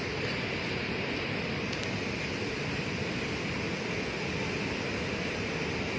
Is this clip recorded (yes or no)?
yes